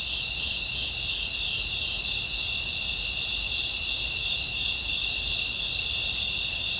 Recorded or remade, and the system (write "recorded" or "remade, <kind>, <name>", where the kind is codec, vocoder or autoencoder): recorded